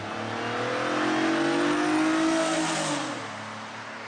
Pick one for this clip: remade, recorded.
recorded